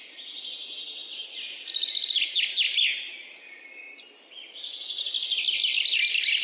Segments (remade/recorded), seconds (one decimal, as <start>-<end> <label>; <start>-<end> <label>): 0.0-6.4 recorded